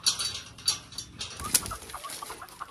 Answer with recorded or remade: recorded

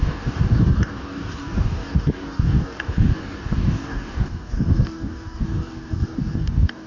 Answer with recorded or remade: remade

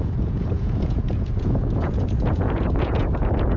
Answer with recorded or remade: remade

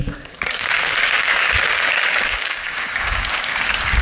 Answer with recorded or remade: remade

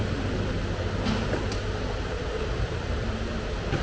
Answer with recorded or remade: recorded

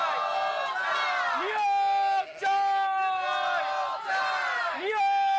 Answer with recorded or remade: recorded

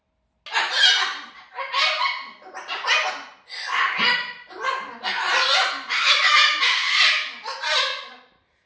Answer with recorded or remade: recorded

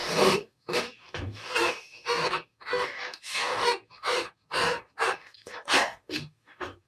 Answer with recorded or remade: remade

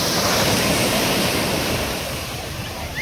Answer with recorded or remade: remade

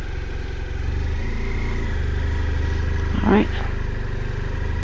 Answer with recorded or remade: recorded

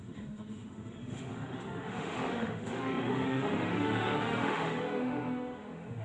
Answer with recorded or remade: remade